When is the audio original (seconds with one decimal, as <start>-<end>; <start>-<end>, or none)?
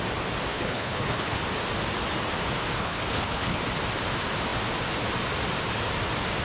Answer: 0.0-0.5; 1.4-2.8; 3.6-6.4